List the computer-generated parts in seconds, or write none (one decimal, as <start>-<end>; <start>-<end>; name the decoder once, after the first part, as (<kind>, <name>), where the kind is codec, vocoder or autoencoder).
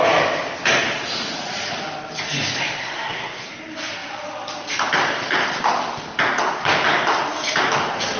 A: 2.8-3.5 (codec, SNAC)